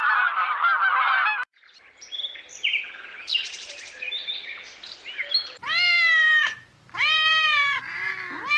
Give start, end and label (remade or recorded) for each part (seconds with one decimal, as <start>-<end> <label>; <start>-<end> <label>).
0.0-0.9 recorded; 0.9-4.3 remade; 4.3-4.9 recorded; 4.9-8.1 remade; 8.1-8.6 recorded